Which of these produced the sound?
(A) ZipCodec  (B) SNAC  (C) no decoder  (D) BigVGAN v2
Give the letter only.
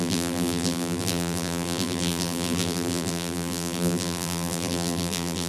D